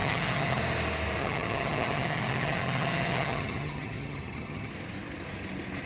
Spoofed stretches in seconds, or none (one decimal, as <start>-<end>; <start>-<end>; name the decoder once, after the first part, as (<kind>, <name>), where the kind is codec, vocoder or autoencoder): 0.0-0.6 (vocoder, HiFi-GAN); 1.2-4.7